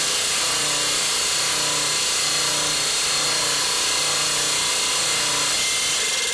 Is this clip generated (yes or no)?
no